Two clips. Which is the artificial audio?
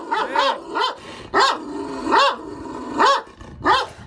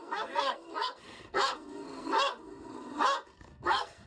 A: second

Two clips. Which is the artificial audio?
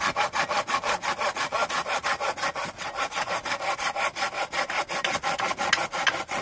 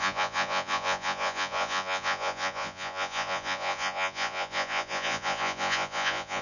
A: second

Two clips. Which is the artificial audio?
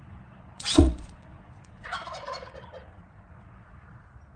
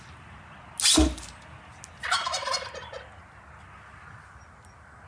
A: first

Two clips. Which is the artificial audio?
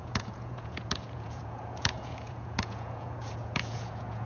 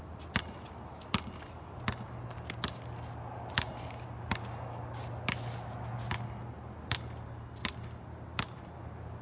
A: first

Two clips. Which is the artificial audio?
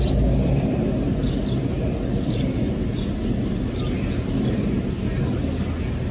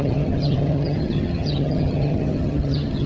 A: second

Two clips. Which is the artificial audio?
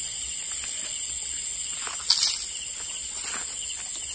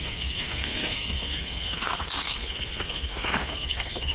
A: second